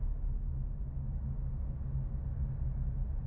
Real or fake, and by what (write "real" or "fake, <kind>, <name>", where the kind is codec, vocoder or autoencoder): real